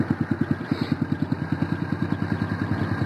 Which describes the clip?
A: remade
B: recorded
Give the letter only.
B